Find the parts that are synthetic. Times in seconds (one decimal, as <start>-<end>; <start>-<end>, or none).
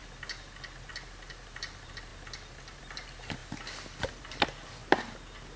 0.9-2.1; 2.8-3.4; 4.2-4.8